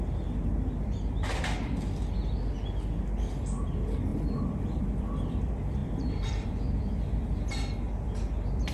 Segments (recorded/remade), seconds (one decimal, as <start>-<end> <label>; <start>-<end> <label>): 0.0-4.1 recorded; 4.1-4.8 remade; 4.8-5.8 recorded; 5.8-6.5 remade; 6.5-8.7 recorded